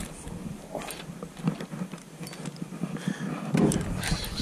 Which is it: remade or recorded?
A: recorded